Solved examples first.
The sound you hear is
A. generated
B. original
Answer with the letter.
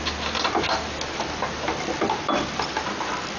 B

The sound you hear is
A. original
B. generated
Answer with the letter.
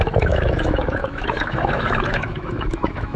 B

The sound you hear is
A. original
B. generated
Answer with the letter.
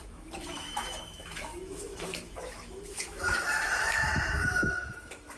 B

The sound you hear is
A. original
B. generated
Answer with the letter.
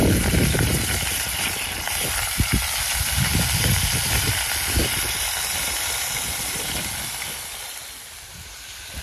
A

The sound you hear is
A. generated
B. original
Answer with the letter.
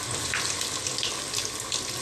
B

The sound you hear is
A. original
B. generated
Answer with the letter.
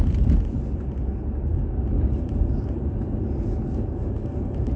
A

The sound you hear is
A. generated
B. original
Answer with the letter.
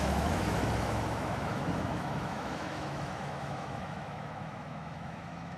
A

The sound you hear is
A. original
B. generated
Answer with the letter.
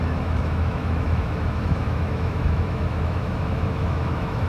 B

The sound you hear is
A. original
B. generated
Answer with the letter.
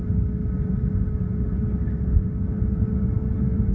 A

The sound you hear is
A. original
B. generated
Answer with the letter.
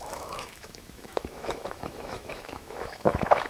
B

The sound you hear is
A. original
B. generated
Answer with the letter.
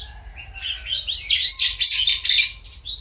A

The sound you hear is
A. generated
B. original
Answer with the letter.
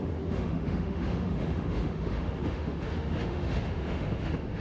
A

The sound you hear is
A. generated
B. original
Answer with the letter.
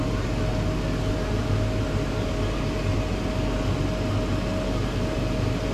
B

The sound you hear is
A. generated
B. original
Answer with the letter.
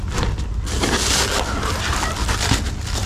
B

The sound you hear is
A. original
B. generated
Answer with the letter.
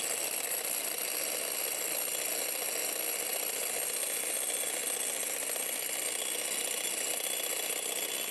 A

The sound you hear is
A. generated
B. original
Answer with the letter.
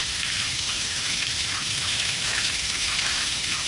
A